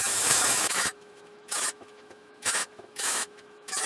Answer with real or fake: fake